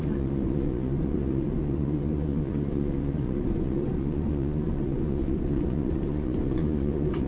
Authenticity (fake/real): fake